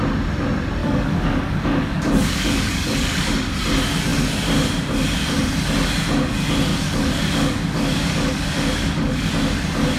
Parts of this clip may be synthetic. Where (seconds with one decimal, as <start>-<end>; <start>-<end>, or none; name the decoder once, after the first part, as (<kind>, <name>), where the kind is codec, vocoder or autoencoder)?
0.8-3.3 (codec, DAC); 6.7-9.3